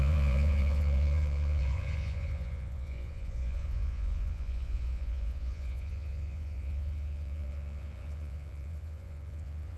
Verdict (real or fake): fake